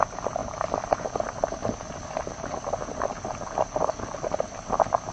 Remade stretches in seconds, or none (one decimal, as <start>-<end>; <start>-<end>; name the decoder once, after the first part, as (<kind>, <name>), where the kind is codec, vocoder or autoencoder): 1.6-3.1 (vocoder, BigVGAN v2)